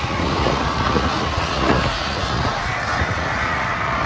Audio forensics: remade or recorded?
remade